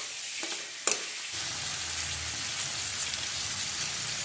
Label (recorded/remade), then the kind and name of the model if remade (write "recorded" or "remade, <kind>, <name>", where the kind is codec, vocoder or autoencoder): recorded